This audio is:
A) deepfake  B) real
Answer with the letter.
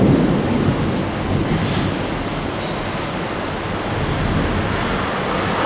B